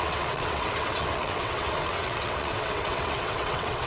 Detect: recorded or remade remade